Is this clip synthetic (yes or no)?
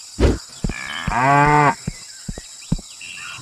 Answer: no